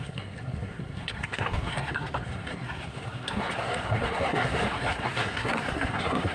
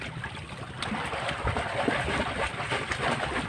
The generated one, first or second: first